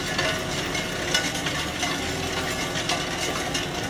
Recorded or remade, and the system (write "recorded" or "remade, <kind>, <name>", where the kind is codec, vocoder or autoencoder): recorded